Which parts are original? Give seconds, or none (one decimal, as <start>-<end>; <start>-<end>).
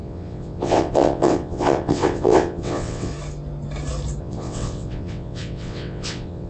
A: 3.1-4.2